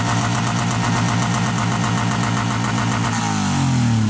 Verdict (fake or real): real